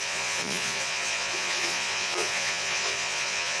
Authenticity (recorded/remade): remade